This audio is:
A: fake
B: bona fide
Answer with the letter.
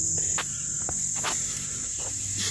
B